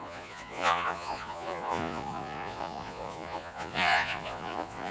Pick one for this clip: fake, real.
fake